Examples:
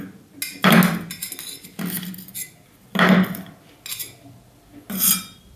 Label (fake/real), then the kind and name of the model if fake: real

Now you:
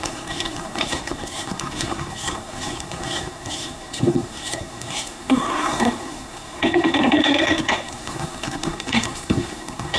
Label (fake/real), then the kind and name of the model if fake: fake, codec, SNAC